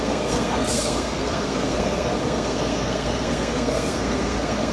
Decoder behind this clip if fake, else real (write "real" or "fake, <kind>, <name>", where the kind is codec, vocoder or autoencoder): fake, codec, SNAC